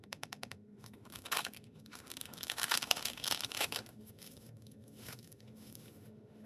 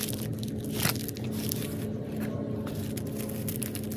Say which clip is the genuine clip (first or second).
second